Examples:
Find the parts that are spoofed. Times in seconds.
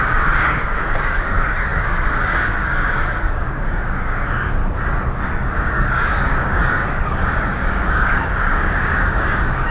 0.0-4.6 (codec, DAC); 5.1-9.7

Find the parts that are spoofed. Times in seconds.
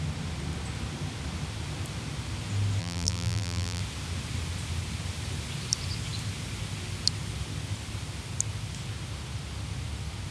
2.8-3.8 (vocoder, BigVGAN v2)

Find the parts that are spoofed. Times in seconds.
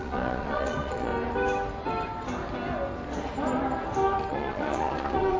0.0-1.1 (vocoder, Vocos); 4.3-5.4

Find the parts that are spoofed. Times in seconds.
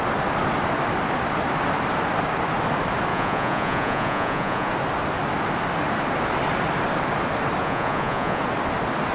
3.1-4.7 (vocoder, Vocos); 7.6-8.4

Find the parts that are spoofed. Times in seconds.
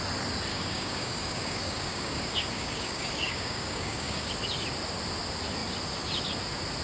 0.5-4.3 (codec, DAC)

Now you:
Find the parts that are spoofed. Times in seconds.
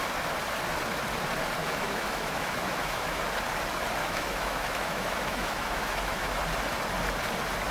1.6-3.2 (autoencoder, DAC-VAE); 4.0-6.4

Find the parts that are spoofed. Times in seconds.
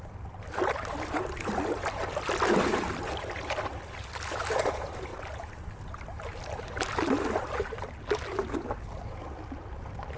none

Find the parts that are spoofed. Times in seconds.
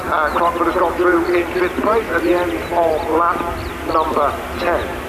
none